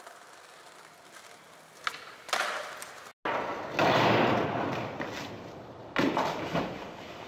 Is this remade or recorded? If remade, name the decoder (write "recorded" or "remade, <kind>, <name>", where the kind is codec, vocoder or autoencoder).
recorded